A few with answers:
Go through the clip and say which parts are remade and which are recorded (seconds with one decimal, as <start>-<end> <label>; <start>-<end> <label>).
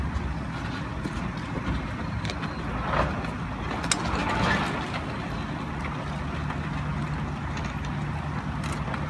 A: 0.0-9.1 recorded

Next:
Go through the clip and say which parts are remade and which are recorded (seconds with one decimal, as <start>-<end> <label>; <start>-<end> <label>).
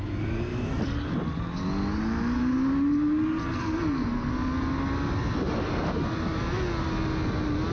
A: 0.0-3.4 recorded; 3.4-4.3 remade; 4.3-7.7 recorded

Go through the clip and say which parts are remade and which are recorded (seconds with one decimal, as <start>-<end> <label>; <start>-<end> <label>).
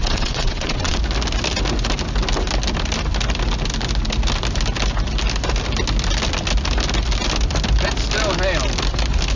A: 0.0-1.0 remade; 1.0-9.4 recorded